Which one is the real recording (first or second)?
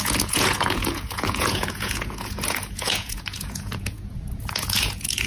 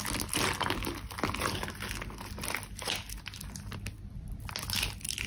second